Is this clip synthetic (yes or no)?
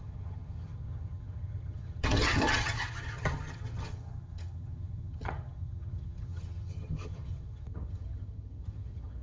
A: yes